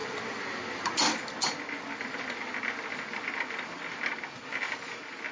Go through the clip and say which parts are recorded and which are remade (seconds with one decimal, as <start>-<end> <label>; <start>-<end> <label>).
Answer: 0.0-5.3 recorded